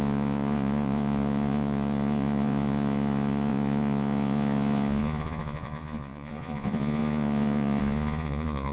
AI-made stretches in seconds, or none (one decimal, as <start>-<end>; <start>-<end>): 0.0-8.7